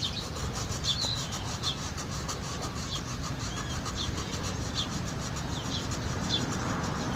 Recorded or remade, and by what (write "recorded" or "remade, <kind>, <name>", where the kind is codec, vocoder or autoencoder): remade, vocoder, BigVGAN v2